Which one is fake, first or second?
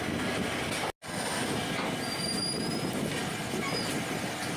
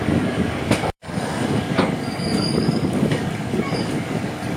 second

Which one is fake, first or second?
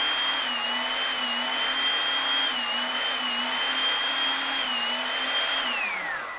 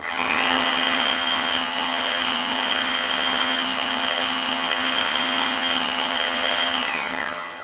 second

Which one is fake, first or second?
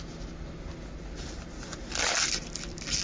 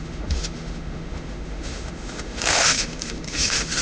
second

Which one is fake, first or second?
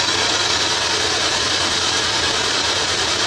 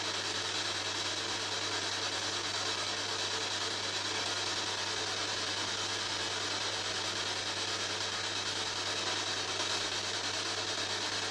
first